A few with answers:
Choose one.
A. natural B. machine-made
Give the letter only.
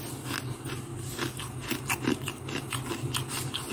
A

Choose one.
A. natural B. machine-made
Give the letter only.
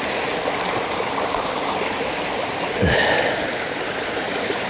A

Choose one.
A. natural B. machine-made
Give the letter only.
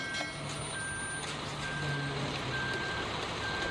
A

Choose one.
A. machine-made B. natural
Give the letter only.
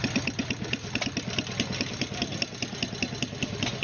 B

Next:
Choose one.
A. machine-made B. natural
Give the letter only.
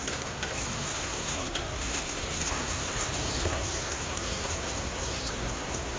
A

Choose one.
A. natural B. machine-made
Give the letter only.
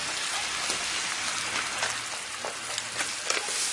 A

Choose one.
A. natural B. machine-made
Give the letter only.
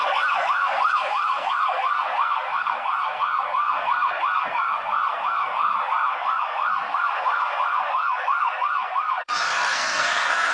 B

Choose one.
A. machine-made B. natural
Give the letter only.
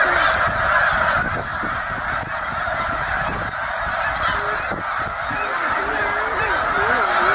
B